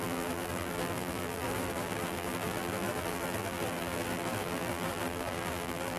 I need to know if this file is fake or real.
fake